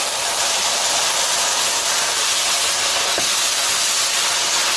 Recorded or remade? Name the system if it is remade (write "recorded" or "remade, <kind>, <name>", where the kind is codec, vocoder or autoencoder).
remade, vocoder, BigVGAN v2